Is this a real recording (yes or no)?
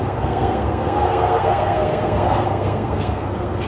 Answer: no